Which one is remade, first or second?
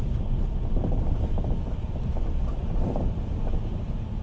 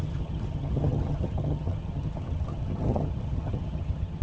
second